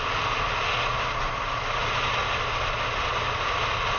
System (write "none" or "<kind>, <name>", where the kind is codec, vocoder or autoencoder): none